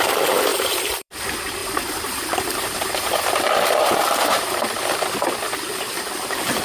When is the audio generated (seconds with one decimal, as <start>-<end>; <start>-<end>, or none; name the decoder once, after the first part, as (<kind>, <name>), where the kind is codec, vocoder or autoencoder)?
0.5-1.1 (vocoder, BigVGAN v2); 1.6-5.0